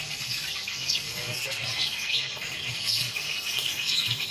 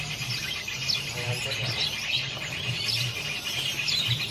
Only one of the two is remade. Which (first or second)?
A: first